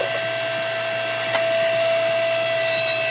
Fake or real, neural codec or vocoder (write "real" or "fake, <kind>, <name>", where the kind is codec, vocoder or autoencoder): real